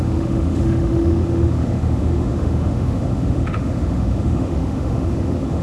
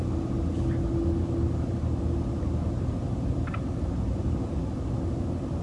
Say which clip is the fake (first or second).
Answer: first